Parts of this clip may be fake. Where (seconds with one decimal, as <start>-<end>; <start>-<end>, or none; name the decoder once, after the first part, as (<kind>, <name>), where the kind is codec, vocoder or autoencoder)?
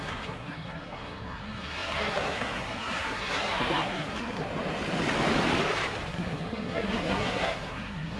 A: 0.0-4.5 (codec, SNAC); 6.1-8.2